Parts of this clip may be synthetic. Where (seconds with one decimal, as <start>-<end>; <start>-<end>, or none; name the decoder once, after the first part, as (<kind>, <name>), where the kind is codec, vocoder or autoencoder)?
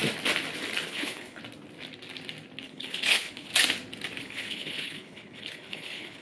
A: 0.9-1.4 (codec, HILCodec); 2.6-3.5; 4.2-6.2